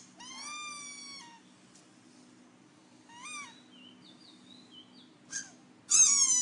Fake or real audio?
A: real